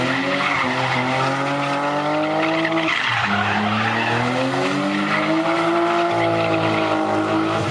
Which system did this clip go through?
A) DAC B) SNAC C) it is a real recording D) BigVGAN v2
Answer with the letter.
C